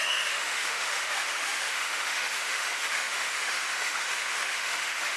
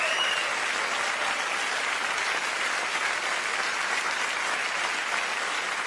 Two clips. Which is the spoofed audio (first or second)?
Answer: first